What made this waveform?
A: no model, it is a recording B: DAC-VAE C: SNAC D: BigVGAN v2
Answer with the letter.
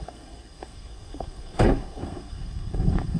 C